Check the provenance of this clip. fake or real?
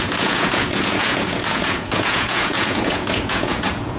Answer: fake